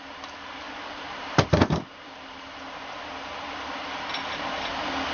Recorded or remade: recorded